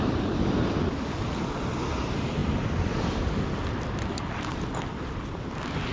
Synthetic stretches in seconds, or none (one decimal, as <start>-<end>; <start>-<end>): none